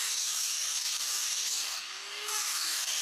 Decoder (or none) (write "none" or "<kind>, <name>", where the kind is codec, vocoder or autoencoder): codec, DAC